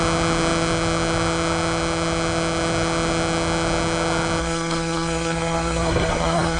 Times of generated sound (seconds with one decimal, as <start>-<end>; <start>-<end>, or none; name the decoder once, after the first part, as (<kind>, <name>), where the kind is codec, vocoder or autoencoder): 4.4-6.6 (codec, SNAC)